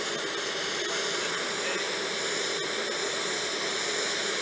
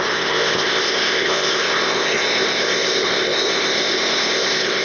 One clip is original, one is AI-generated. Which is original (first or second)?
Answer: first